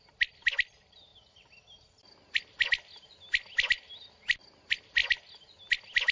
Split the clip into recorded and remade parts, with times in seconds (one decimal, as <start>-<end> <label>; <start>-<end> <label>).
0.0-6.1 recorded